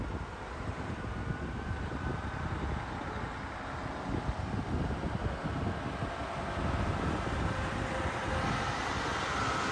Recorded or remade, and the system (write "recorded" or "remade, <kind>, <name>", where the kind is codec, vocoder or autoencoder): recorded